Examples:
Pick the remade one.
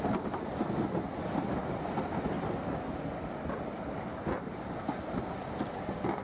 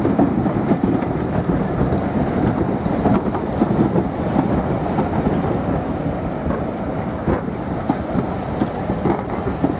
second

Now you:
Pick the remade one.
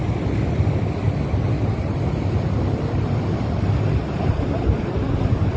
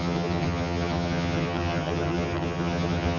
second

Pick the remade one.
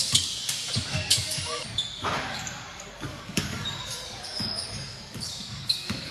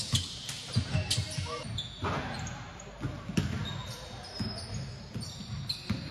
first